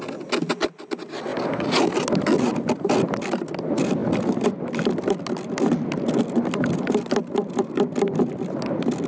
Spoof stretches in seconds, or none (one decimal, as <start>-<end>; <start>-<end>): none